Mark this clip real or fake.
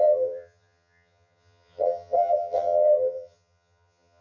fake